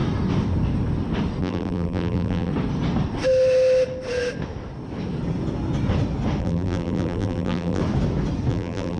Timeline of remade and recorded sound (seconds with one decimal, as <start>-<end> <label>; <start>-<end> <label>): 0.0-1.4 recorded; 1.4-2.5 remade; 2.5-6.4 recorded; 6.4-7.8 remade; 7.8-8.5 recorded; 8.5-9.0 remade